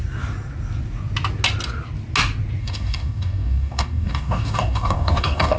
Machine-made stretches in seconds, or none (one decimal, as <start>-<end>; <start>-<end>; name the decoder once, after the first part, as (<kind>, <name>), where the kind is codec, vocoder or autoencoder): 2.6-5.6 (codec, DAC)